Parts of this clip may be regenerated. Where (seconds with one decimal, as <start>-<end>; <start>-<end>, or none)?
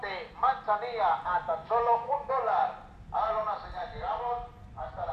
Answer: 1.6-2.3